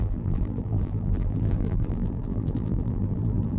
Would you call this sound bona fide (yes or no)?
no